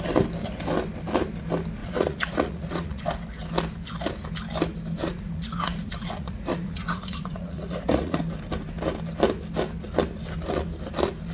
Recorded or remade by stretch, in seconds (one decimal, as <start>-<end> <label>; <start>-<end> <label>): 0.0-1.8 recorded; 1.8-3.0 remade; 3.0-5.0 recorded; 5.0-8.2 remade; 8.2-11.3 recorded